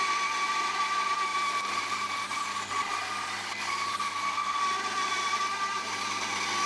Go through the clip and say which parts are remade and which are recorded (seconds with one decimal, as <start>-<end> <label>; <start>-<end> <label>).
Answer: 0.0-1.3 recorded; 1.3-2.4 remade; 2.4-5.0 recorded; 5.0-6.0 remade; 6.0-6.7 recorded